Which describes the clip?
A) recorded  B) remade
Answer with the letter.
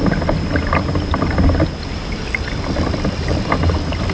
A